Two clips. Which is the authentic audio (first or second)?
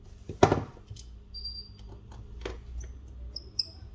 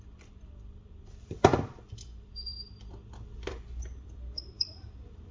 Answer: first